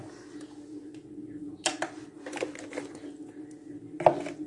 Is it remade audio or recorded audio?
recorded